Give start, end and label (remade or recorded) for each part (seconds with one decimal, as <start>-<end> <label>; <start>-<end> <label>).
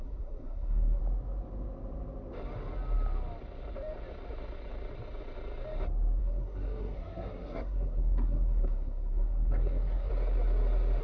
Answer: 0.0-1.0 remade; 1.0-6.2 recorded; 6.2-10.1 remade; 10.1-11.0 recorded